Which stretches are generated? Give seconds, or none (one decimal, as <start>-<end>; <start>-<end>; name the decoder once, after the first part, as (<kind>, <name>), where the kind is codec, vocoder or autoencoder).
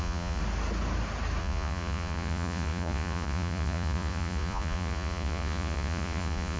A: 0.0-0.4 (vocoder, Vocos); 1.4-6.6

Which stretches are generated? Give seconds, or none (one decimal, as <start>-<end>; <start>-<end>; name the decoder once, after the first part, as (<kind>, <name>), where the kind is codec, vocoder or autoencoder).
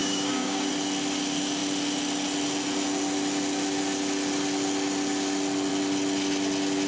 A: 0.0-0.7 (codec, DAC)